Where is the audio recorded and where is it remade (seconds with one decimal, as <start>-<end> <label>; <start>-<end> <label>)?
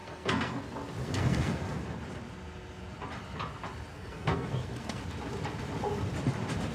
0.0-0.6 remade; 0.6-1.0 recorded; 1.0-1.8 remade; 1.8-3.9 recorded; 3.9-5.0 remade; 5.0-6.7 recorded